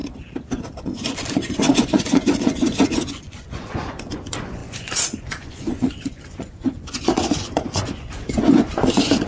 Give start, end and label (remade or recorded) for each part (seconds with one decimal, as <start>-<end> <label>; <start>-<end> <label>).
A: 0.0-0.8 recorded; 0.8-9.3 remade